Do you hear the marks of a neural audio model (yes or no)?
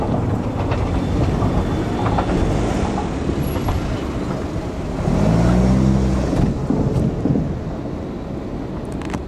no